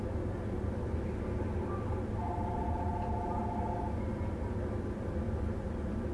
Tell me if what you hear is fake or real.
real